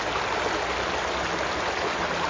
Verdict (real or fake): real